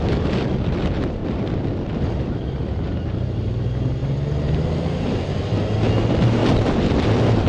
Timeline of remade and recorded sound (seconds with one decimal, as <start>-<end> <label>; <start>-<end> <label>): 0.0-1.2 recorded; 1.2-3.0 remade; 3.0-6.4 recorded; 6.4-7.5 remade